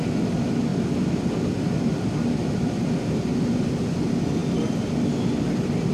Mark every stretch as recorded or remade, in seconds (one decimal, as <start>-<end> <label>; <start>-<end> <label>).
0.0-5.9 recorded

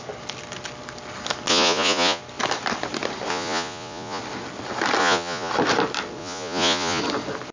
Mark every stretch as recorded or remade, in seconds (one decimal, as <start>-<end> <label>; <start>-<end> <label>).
0.0-1.5 recorded; 1.5-2.2 remade; 2.2-3.3 recorded; 3.3-4.2 remade; 4.2-5.0 recorded; 5.0-5.5 remade; 5.5-6.2 recorded; 6.2-7.0 remade; 7.0-7.5 recorded

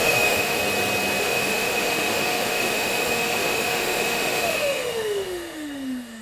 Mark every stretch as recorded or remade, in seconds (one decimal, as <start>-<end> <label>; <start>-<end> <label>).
0.0-0.6 remade; 0.6-1.2 recorded; 1.2-6.2 remade

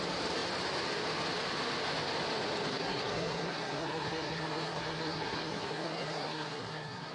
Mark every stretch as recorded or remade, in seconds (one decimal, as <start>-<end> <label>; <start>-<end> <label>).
0.0-2.7 recorded; 2.7-7.1 remade

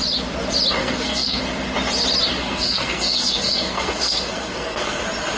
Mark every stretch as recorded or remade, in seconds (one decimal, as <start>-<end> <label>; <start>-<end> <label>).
0.0-0.8 recorded; 0.8-1.4 remade; 1.4-2.4 recorded; 2.4-5.0 remade; 5.0-5.4 recorded

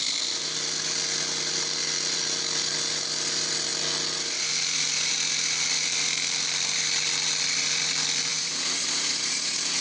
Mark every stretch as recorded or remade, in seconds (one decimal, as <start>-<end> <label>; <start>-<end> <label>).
0.0-8.3 recorded; 8.3-9.8 remade

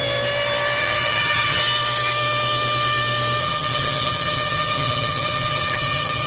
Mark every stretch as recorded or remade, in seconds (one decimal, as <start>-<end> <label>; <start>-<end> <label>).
0.0-0.8 recorded; 0.8-1.6 remade; 1.6-3.4 recorded; 3.4-6.3 remade

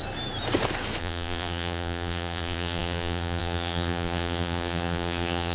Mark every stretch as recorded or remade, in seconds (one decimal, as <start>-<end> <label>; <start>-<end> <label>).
0.0-1.0 recorded; 1.0-5.5 remade